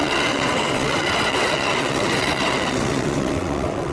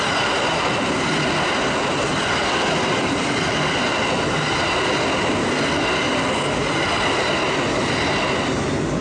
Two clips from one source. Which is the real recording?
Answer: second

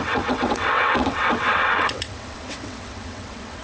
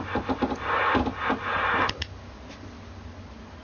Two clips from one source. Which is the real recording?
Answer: second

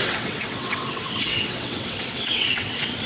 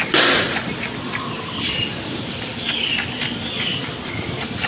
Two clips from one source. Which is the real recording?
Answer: second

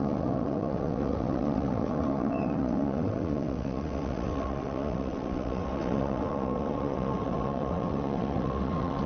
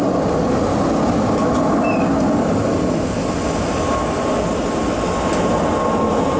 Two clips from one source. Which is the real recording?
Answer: second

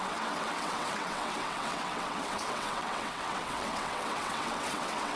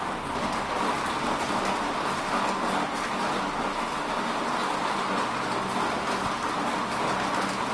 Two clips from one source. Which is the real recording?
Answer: second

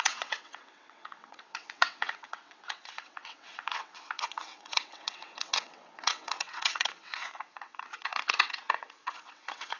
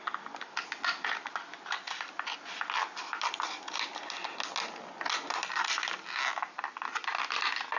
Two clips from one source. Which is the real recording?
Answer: second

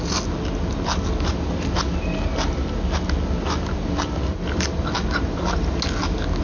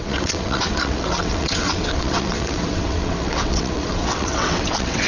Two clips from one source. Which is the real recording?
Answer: first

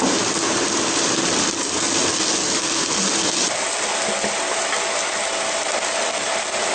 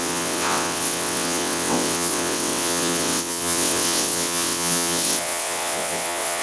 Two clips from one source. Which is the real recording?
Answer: first